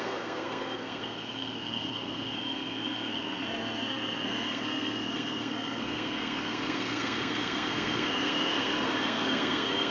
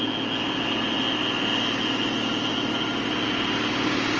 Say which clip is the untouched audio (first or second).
second